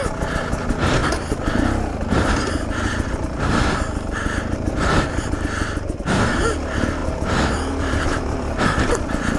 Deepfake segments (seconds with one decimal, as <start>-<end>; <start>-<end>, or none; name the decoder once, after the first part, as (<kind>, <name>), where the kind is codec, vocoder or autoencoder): none